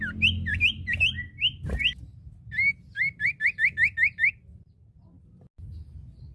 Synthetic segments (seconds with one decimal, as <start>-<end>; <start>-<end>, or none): none